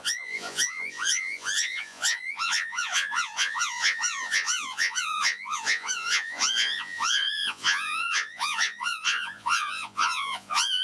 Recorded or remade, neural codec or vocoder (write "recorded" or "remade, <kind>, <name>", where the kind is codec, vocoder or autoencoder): remade, vocoder, Vocos